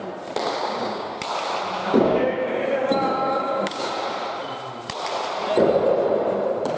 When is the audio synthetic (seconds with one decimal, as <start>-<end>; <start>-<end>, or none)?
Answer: 0.6-1.2; 1.8-3.9